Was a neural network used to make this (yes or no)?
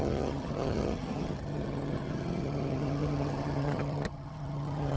yes